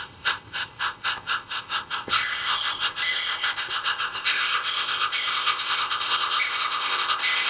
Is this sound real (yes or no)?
no